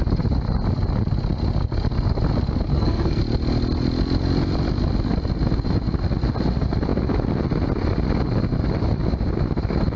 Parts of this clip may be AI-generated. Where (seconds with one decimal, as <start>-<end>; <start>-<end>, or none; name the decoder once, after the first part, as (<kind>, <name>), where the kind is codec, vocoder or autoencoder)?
2.7-3.2 (codec, SNAC)